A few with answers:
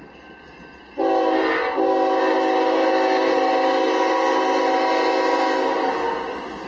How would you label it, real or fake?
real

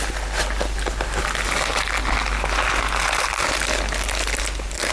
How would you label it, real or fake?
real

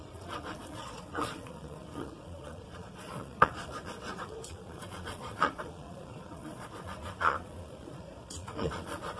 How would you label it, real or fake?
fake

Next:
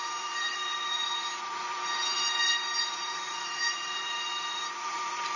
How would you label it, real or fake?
fake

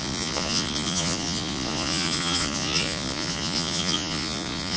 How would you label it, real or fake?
fake